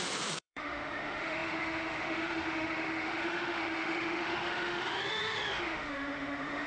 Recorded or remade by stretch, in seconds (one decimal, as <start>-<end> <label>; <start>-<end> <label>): 0.0-6.7 remade